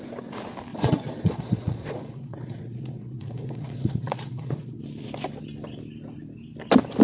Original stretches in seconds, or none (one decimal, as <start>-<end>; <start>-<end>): 0.0-0.7; 4.8-7.0